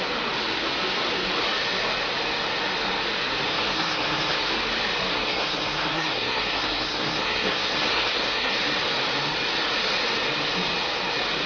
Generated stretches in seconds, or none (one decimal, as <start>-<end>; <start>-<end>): 3.5-4.5; 5.1-8.5